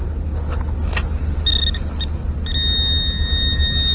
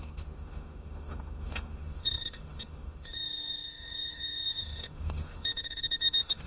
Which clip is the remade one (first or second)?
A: second